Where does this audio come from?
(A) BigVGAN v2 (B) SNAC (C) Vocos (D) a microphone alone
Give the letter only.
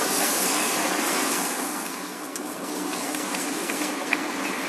B